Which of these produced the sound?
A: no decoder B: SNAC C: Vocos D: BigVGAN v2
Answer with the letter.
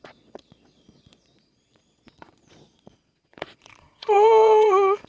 C